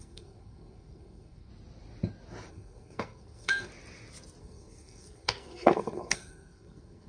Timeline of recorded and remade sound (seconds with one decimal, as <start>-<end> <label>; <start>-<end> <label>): 0.0-1.5 remade; 1.5-2.5 recorded; 2.5-3.7 remade; 3.7-4.4 recorded; 4.4-7.1 remade